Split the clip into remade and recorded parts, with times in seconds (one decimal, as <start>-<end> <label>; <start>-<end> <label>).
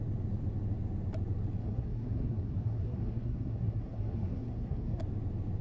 0.0-1.6 recorded; 1.6-5.0 remade; 5.0-5.6 recorded